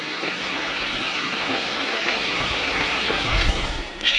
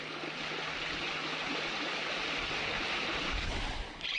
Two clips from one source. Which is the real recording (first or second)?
second